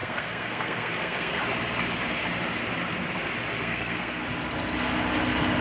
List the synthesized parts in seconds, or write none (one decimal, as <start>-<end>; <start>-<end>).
0.0-1.4; 3.5-4.2